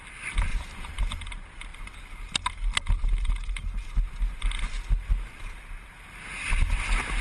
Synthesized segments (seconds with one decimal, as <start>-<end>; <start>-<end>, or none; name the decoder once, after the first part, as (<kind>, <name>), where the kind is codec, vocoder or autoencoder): 0.5-1.0 (vocoder, BigVGAN v2)